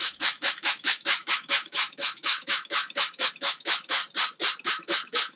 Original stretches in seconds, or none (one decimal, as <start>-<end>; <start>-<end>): 4.0-4.7